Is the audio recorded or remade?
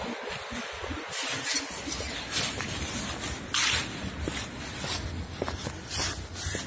recorded